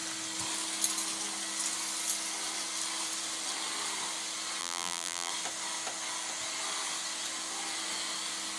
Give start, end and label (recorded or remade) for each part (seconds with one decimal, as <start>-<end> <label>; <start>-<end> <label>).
0.0-4.6 recorded; 4.6-5.3 remade; 5.3-8.6 recorded